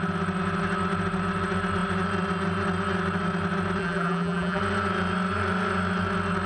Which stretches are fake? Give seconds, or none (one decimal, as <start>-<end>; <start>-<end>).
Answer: 3.8-4.6